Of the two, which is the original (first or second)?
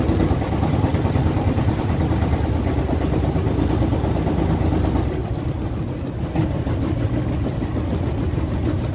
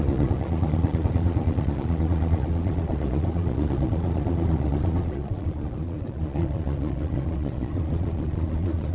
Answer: first